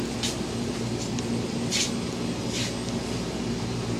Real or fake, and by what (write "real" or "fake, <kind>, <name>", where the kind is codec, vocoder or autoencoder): real